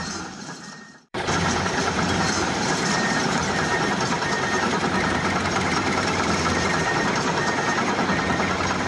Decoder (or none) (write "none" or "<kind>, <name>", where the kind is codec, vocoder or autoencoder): vocoder, BigVGAN v2